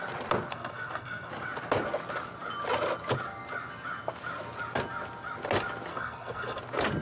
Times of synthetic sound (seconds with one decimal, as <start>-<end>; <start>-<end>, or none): 0.5-1.3; 5.9-6.6

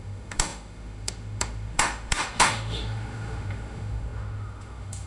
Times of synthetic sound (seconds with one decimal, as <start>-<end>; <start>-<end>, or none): 0.0-5.1

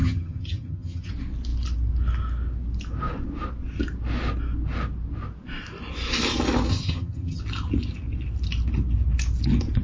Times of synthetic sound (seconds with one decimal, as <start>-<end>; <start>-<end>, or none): 0.0-1.1; 6.7-7.4

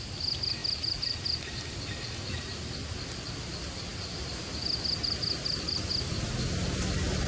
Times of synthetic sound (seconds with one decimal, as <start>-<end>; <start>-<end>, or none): none